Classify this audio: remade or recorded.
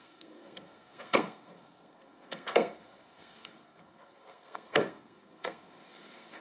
remade